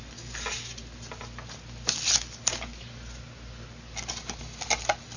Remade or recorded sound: recorded